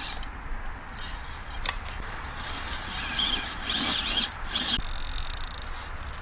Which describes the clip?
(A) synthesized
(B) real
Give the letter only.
B